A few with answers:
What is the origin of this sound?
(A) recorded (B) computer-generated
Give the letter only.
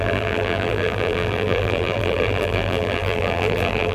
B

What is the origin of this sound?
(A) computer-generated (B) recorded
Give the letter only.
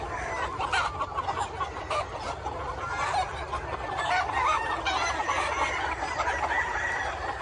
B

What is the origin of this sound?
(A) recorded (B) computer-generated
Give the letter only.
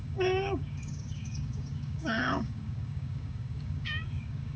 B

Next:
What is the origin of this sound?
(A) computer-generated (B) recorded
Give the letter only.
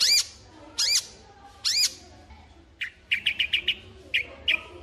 B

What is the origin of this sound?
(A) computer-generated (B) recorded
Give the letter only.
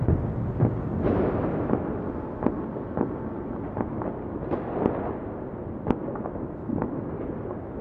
B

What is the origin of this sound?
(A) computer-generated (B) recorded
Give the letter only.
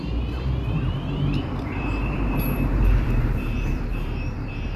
A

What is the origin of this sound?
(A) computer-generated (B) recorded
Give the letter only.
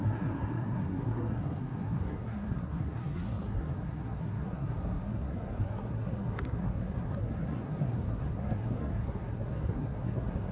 A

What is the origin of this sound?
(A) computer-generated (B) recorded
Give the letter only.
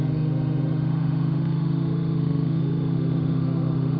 A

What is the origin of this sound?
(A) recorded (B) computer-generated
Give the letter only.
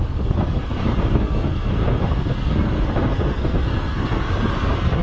B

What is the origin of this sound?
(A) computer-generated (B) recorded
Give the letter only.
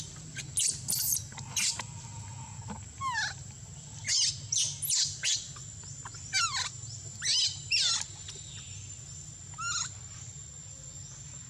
B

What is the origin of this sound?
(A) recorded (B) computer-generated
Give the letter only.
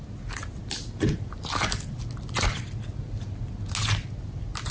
A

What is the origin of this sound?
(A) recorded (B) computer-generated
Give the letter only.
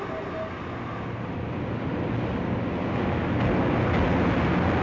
A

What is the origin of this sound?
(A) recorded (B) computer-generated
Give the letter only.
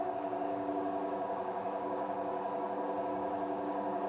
B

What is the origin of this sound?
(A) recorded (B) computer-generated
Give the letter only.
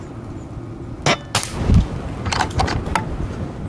A